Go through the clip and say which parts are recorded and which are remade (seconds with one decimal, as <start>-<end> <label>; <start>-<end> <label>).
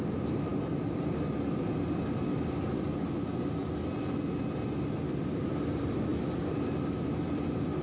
0.0-7.8 recorded